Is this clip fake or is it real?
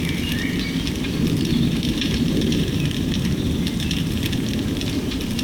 fake